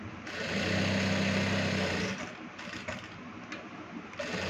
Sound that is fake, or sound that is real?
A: real